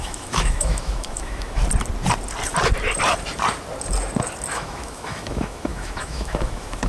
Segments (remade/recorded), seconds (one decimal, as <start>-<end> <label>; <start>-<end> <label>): 0.0-1.6 remade; 1.6-4.5 recorded; 4.5-6.9 remade